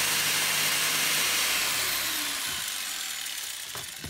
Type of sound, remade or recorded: recorded